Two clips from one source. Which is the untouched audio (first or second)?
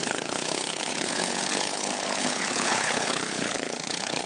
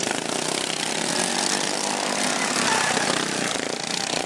second